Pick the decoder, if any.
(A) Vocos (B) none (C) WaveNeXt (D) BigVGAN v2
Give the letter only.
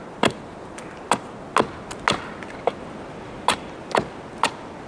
B